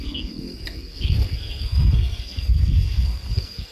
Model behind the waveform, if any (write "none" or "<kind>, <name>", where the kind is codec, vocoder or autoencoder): codec, SNAC